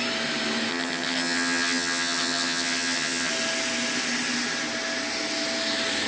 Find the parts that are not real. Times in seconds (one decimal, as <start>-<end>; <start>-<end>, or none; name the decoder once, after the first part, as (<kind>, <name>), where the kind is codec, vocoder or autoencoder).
0.7-3.3 (vocoder, HiFi-GAN)